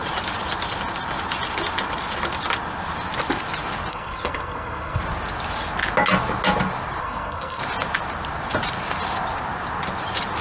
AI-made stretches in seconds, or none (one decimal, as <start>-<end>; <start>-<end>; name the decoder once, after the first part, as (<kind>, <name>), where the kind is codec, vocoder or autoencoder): 3.9-5.0 (codec, SNAC); 7.0-7.6

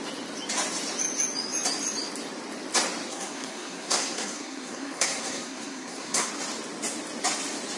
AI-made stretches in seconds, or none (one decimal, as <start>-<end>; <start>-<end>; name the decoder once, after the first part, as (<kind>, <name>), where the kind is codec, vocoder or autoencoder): 3.1-6.3 (codec, SNAC)